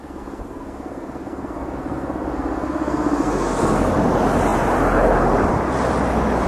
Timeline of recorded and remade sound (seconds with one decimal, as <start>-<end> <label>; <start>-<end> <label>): 0.0-3.9 remade; 3.9-6.5 recorded